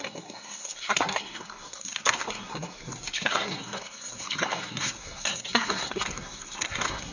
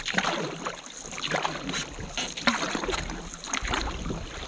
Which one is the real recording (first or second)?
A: second